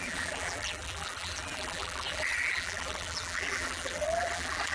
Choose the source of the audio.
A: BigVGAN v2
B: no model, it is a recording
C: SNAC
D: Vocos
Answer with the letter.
A